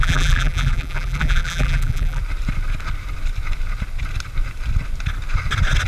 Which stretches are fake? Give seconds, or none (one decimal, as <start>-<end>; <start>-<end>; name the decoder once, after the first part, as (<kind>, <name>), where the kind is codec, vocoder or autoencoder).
0.0-2.2 (vocoder, BigVGAN v2)